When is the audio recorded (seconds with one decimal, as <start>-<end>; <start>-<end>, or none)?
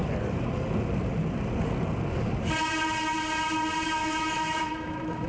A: 0.0-3.8